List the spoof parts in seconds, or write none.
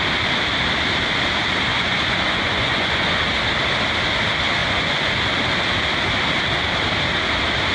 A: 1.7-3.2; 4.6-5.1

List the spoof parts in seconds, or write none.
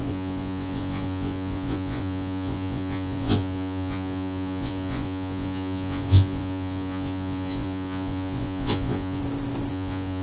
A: 0.0-9.2; 9.7-10.2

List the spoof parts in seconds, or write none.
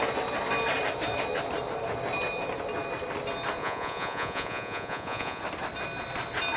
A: 3.6-5.4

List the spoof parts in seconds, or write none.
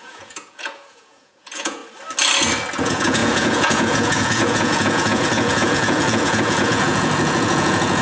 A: 0.0-1.8; 2.8-8.0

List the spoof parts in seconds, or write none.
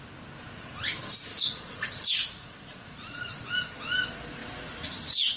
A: 1.3-3.5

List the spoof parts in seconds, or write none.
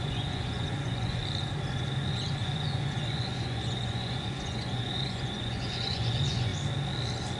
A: 0.0-1.2; 1.7-6.5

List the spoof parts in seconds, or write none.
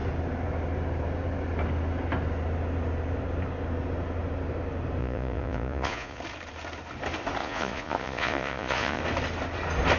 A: 5.0-6.2; 7.4-9.0